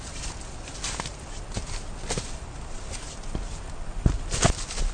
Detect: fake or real real